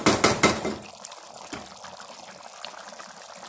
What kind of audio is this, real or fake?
real